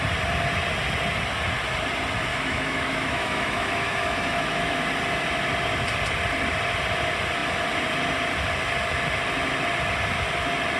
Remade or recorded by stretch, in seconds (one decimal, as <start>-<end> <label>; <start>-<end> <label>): 0.0-2.3 recorded; 2.3-4.8 remade; 4.8-10.8 recorded